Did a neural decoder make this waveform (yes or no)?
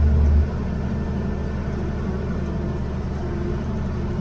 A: no